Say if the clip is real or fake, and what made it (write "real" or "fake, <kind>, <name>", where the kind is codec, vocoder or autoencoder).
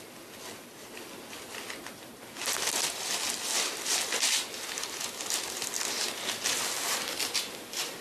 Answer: real